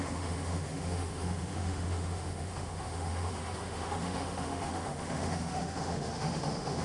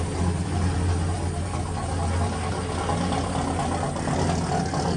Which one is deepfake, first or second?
first